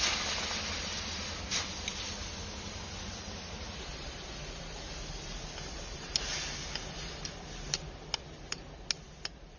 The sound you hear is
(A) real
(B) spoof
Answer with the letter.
A